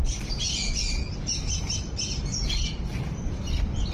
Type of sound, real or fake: real